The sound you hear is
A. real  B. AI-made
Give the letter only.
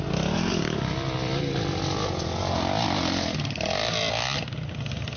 A